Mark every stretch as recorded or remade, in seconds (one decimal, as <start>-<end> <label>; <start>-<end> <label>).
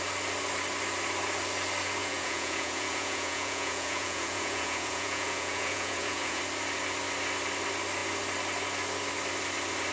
0.0-2.0 recorded; 2.0-6.4 remade; 6.4-9.9 recorded